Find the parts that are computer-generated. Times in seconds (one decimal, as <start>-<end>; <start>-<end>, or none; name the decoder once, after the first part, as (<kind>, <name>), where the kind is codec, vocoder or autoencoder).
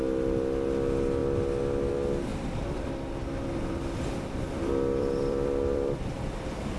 2.3-6.8 (vocoder, BigVGAN v2)